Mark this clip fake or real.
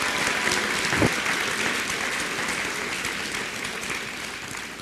real